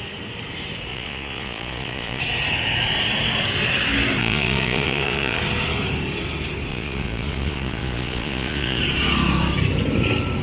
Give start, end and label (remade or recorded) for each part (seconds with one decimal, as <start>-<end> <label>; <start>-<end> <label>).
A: 0.0-0.9 recorded; 0.9-2.2 remade; 2.2-4.2 recorded; 4.2-5.4 remade; 5.4-6.7 recorded; 6.7-8.8 remade; 8.8-10.4 recorded